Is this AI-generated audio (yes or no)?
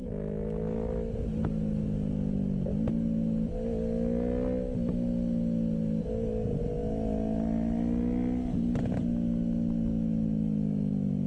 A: no